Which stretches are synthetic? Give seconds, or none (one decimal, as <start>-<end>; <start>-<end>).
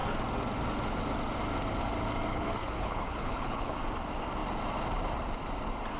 2.3-3.8